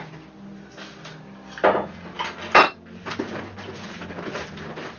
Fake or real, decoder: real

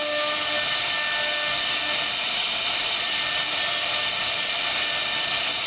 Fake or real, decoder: real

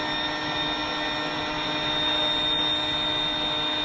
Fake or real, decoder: real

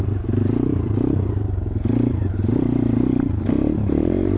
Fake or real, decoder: fake, vocoder, BigVGAN v2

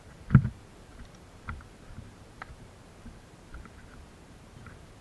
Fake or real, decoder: fake, vocoder, BigVGAN v2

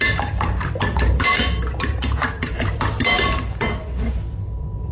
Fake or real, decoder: fake, vocoder, BigVGAN v2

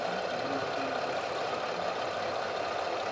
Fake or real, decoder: real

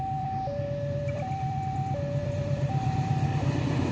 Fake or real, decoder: fake, vocoder, BigVGAN v2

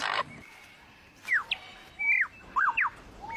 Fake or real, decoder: real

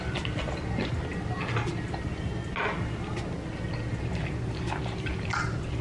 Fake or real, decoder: real